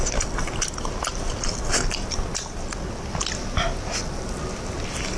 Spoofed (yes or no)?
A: no